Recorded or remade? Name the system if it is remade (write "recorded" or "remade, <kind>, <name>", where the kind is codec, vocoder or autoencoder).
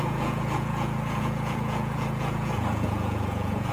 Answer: remade, vocoder, Vocos